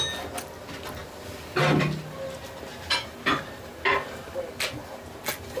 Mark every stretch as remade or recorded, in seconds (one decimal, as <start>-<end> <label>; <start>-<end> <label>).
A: 0.0-5.6 recorded